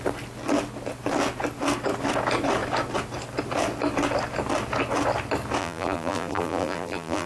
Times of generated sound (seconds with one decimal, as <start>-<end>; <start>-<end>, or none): 5.6-7.3